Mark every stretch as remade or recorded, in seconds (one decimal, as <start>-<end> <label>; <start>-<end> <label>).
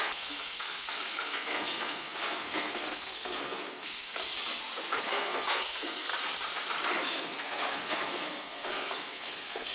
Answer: 0.0-4.2 remade; 4.2-5.0 recorded; 5.0-6.1 remade; 6.1-7.0 recorded; 7.0-9.7 remade